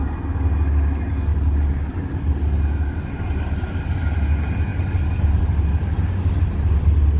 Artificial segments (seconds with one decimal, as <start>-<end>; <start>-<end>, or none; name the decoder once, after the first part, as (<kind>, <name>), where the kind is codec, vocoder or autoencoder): none